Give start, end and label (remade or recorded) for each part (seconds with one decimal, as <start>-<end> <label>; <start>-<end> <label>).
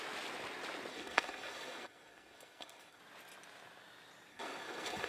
0.0-0.9 recorded; 0.9-3.0 remade; 3.0-4.3 recorded; 4.3-5.1 remade